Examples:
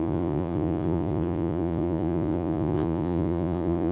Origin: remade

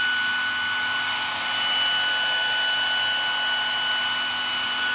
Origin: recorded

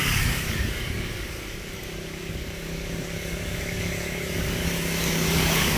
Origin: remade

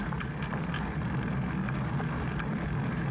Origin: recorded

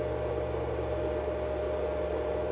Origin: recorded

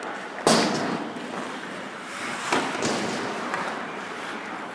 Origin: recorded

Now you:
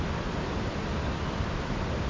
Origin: recorded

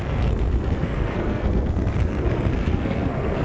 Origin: remade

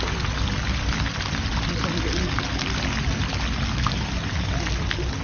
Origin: recorded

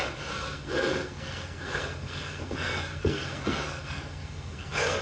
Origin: remade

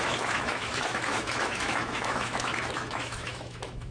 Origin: remade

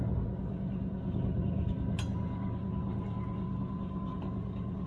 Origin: recorded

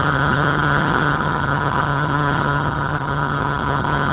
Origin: remade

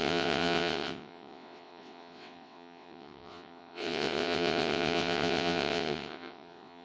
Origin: remade